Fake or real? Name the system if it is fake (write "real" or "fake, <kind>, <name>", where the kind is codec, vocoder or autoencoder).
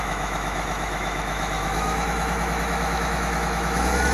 fake, autoencoder, DAC-VAE